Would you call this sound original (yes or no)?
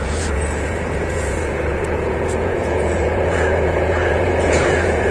no